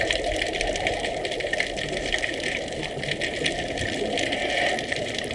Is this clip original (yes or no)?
yes